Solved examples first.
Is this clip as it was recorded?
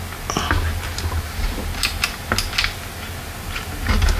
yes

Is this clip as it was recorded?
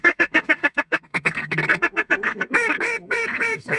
no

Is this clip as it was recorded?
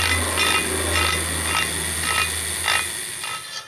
yes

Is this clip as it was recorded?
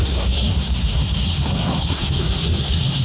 no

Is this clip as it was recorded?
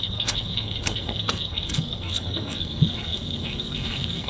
no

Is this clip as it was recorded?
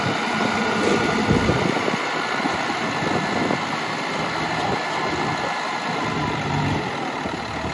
yes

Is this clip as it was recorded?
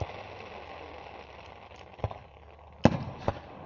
yes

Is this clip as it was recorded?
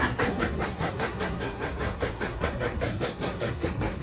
no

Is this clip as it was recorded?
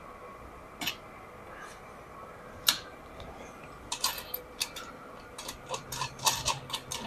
yes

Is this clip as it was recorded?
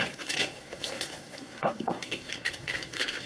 no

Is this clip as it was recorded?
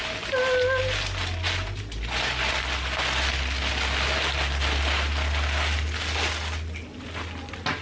yes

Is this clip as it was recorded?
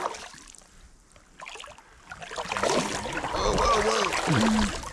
yes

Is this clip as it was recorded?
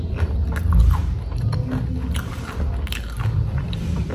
yes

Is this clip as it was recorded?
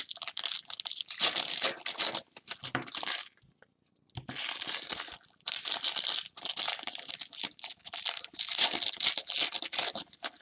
yes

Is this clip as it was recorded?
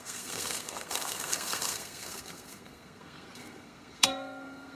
no